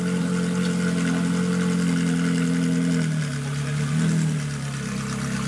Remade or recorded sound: recorded